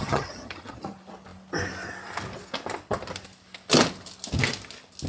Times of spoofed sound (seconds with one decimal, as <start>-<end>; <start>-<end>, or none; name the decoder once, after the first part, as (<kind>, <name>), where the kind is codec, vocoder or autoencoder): 0.0-0.8 (vocoder, HiFi-GAN)